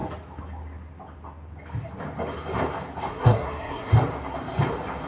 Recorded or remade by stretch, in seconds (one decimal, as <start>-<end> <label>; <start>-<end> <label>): 0.0-3.1 recorded; 3.1-3.9 remade; 3.9-5.1 recorded